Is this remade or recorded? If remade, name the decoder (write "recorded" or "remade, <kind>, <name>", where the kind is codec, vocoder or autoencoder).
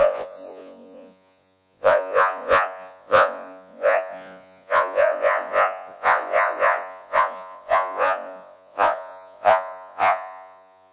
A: remade, vocoder, Vocos